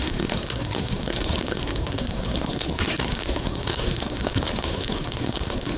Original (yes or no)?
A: no